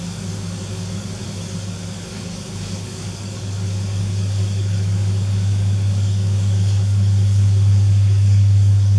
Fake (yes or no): yes